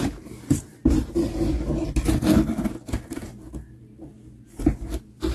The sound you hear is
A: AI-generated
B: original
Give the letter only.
B